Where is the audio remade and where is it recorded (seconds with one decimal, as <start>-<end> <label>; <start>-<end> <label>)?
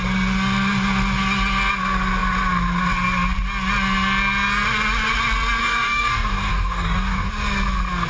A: 0.0-5.6 recorded; 5.6-7.3 remade; 7.3-8.1 recorded